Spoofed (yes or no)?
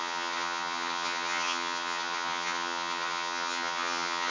yes